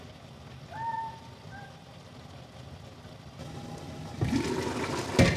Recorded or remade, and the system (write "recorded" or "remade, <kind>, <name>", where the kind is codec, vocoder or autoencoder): recorded